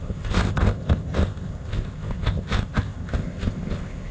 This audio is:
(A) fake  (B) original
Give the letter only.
A